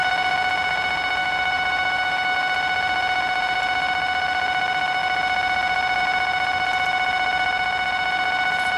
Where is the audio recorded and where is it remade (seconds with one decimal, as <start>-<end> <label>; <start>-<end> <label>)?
0.0-1.2 recorded; 1.2-2.3 remade; 2.3-8.8 recorded